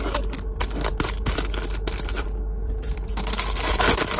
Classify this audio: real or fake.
real